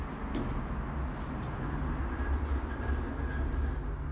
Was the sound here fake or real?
real